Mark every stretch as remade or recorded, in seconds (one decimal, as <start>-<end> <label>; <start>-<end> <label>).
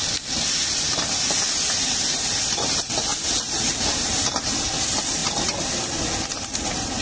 0.0-7.0 recorded